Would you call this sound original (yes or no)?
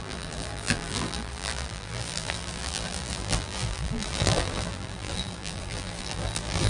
no